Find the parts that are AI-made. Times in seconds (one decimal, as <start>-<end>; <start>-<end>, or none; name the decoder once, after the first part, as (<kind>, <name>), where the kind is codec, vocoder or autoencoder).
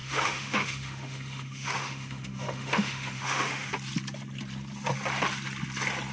0.0-3.7 (autoencoder, DAC-VAE)